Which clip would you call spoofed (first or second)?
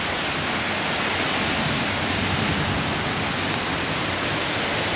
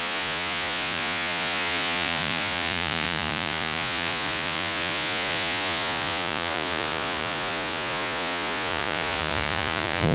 second